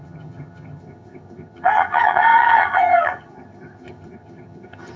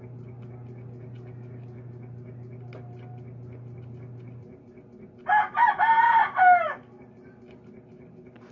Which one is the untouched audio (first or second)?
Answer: second